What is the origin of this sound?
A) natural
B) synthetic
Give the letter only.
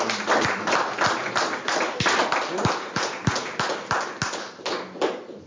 A